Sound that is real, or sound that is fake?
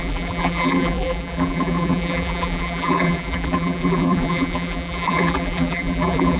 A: fake